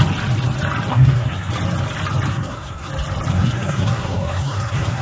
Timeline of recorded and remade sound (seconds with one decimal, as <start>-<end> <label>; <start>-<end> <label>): 0.0-0.9 recorded; 0.9-1.5 remade; 1.5-2.3 recorded; 2.3-2.9 remade; 2.9-3.3 recorded; 3.3-5.0 remade